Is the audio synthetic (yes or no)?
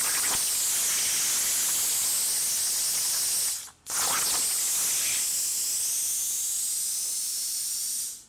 no